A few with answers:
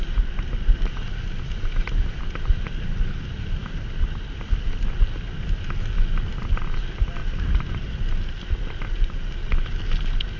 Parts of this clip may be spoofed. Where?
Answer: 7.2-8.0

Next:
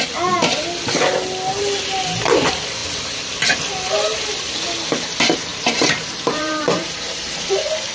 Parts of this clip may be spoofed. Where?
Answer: 5.5-7.4

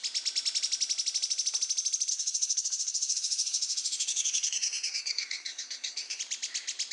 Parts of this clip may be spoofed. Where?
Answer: 2.1-6.2

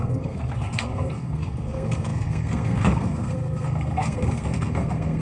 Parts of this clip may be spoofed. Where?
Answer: 0.0-5.2

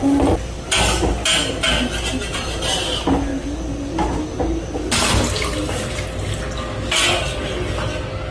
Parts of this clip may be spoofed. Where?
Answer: none

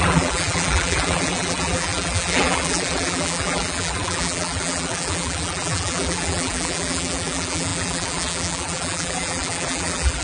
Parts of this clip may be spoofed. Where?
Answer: 0.0-10.2

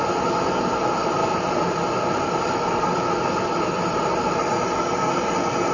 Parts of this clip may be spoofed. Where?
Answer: 1.2-4.6

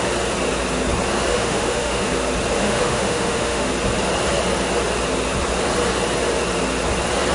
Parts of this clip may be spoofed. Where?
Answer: 1.3-2.1; 2.6-3.7